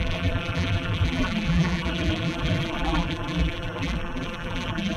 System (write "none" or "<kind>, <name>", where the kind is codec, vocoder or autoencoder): vocoder, BigVGAN v2